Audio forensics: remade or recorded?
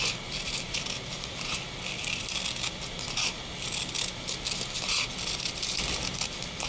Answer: recorded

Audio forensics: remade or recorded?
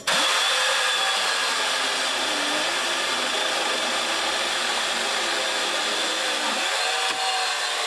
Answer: recorded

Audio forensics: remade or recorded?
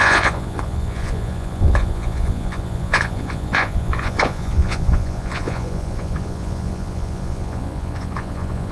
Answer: remade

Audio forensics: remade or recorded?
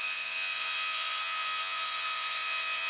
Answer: remade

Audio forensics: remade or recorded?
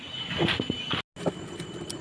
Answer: recorded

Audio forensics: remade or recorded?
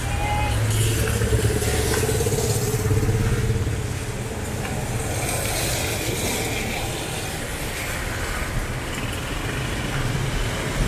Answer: recorded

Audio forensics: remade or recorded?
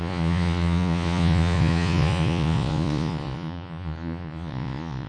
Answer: remade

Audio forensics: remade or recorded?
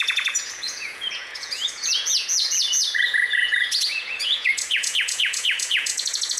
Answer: remade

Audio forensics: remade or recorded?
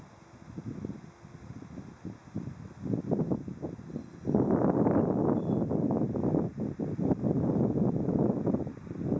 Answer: recorded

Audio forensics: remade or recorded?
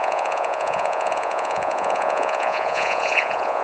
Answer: remade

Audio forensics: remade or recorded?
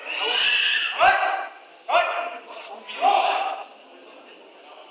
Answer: recorded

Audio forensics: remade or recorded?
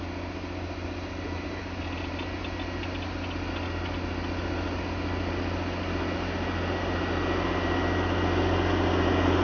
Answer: recorded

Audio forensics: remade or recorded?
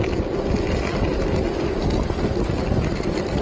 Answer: recorded